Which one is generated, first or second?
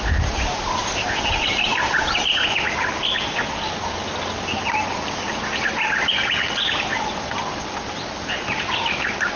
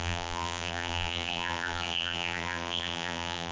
second